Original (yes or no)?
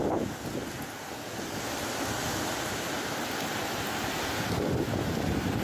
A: yes